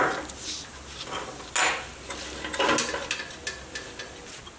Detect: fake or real real